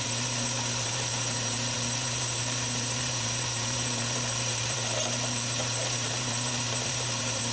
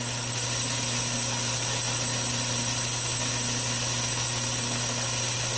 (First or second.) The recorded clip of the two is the second